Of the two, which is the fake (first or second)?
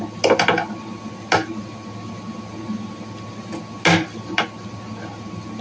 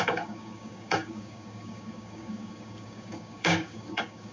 second